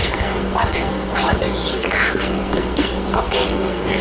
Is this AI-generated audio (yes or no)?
yes